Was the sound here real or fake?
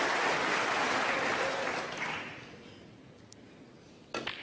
real